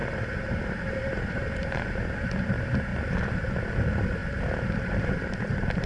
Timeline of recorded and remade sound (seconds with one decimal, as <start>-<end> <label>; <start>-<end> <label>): 0.0-2.3 remade; 2.3-4.2 recorded; 4.2-5.9 remade